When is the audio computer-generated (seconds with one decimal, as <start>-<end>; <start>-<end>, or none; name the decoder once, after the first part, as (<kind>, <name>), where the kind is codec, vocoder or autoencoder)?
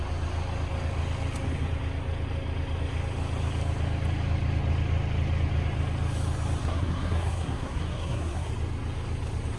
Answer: 6.6-8.5 (codec, SNAC)